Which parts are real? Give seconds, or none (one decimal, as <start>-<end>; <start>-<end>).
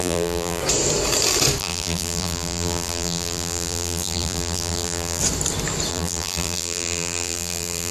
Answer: 0.6-1.6; 5.2-5.9